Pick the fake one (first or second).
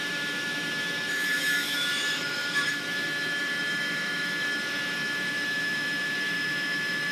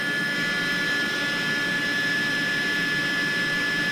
first